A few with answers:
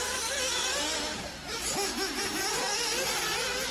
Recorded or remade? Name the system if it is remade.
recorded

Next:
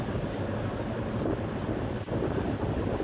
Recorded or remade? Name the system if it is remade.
recorded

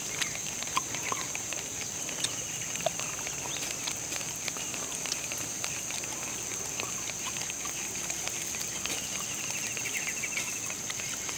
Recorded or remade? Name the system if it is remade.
remade, vocoder, BigVGAN v2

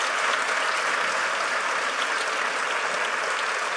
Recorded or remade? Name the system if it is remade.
recorded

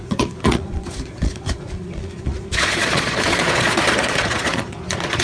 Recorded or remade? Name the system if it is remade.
remade, vocoder, Vocos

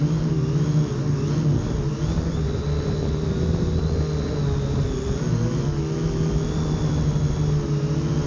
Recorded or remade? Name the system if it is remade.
recorded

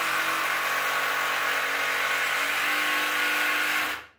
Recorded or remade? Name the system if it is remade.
recorded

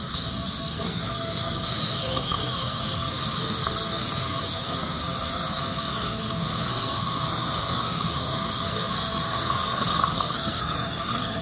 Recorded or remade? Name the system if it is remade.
remade, codec, SNAC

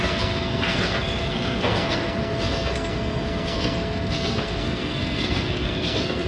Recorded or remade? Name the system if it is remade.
remade, codec, SNAC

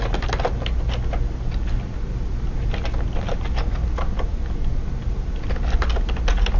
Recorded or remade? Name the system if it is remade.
recorded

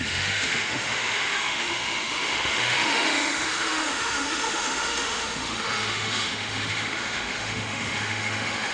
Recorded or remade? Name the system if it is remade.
remade, autoencoder, DAC-VAE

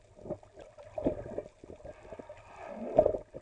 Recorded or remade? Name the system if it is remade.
recorded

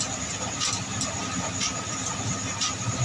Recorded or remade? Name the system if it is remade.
recorded